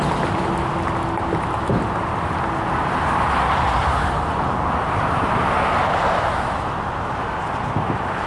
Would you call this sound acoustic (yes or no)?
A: yes